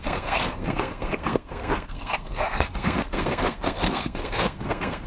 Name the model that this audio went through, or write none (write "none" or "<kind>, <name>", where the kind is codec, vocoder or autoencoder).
codec, SNAC